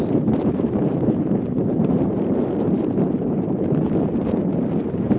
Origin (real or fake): fake